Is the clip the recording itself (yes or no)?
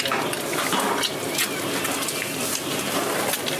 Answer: yes